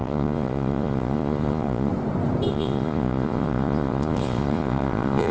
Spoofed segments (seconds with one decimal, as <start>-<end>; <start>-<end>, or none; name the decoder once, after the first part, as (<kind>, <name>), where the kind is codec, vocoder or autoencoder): 0.0-1.9 (vocoder, Vocos); 2.5-5.3